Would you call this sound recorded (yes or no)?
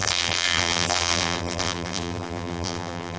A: no